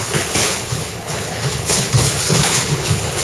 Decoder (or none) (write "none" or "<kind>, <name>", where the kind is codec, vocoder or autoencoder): codec, HILCodec